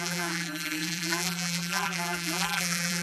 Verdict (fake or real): fake